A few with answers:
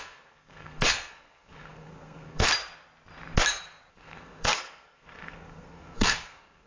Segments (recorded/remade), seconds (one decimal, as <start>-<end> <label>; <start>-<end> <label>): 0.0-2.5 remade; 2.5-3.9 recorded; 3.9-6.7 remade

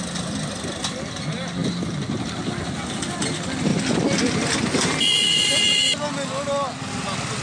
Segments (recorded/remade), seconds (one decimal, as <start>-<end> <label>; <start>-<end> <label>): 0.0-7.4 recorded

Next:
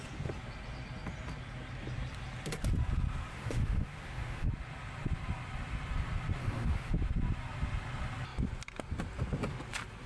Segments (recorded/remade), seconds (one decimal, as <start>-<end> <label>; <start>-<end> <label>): 0.0-3.3 recorded; 3.3-4.5 remade; 4.5-6.4 recorded; 6.4-6.9 remade; 6.9-10.1 recorded

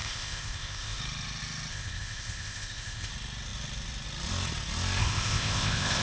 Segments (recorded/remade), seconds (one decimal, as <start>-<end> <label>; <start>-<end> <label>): 0.0-1.0 remade; 1.0-1.7 recorded; 1.7-3.1 remade; 3.1-5.0 recorded; 5.0-6.0 remade

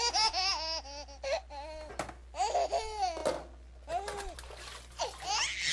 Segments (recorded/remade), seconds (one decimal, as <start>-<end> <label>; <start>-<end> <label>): 0.0-5.7 recorded

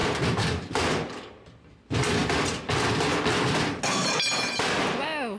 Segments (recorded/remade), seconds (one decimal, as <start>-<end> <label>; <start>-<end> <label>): 0.0-5.4 recorded

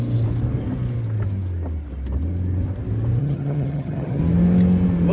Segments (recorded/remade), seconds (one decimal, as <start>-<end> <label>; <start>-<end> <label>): 0.0-3.2 recorded; 3.2-4.2 remade; 4.2-5.1 recorded